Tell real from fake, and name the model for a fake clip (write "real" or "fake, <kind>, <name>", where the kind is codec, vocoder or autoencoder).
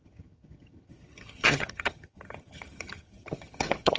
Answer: fake, vocoder, HiFi-GAN